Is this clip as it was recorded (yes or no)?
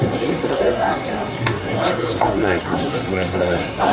no